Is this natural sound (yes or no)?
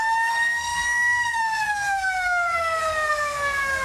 no